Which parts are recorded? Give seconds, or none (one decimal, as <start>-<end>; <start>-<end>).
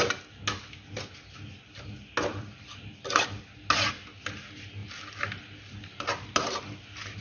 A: 0.0-2.3; 3.1-4.8; 6.2-7.2